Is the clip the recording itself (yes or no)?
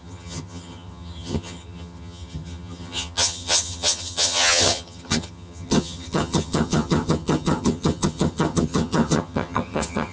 no